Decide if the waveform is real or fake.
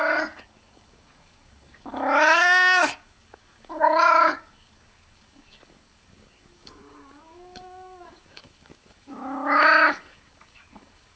fake